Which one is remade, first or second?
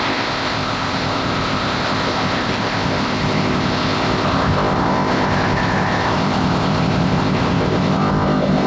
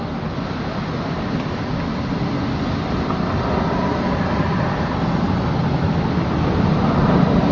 first